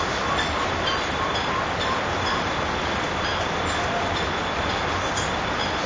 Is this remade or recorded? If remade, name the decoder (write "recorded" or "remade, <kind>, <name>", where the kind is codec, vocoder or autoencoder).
recorded